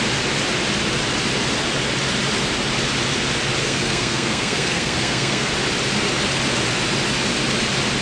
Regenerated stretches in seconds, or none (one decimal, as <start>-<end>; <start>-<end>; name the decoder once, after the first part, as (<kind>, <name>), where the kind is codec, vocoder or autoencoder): 3.6-5.5 (codec, SNAC)